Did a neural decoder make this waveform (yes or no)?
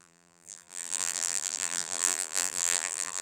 yes